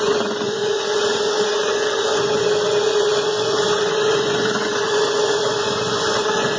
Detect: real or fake fake